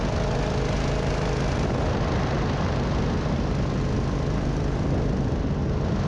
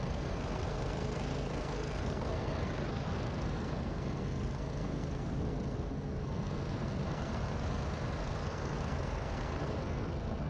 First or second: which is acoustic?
first